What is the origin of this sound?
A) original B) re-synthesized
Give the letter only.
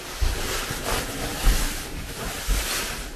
A